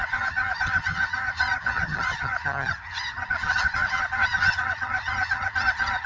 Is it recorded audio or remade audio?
remade